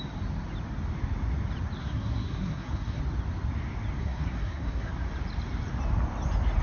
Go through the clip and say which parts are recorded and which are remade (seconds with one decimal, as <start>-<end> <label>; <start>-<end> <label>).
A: 0.0-1.8 recorded; 1.8-3.0 remade; 3.0-4.0 recorded; 4.0-4.9 remade; 4.9-6.6 recorded